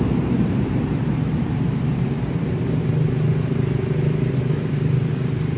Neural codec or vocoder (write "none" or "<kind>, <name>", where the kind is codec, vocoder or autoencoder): vocoder, BigVGAN v2